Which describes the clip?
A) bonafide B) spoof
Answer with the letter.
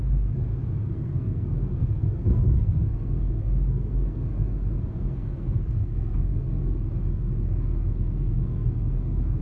B